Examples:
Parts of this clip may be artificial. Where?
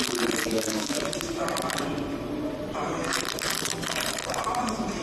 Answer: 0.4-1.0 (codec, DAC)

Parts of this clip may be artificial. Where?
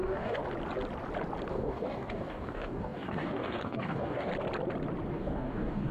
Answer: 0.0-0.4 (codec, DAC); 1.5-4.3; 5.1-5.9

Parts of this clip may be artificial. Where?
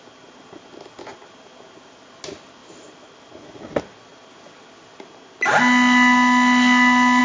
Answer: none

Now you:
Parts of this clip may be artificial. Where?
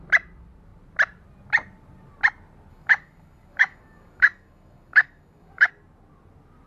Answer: 2.7-5.7 (codec, DAC)